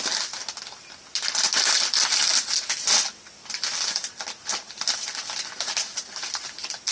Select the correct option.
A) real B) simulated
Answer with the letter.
A